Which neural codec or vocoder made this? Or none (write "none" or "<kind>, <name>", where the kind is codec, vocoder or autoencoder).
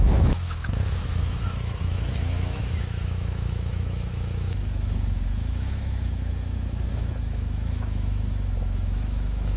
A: autoencoder, DAC-VAE